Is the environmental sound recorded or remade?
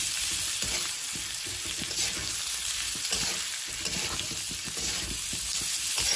recorded